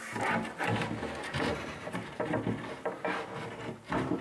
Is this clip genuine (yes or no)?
yes